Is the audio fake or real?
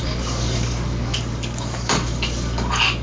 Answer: fake